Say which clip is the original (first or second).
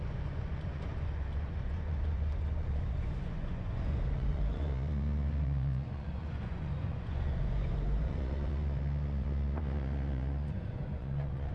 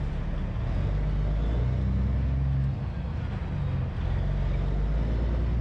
second